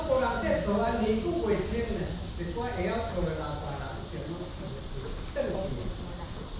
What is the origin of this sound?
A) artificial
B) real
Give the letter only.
B